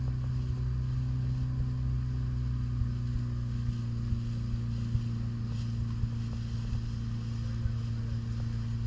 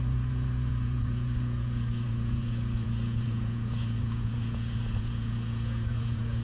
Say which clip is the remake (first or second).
second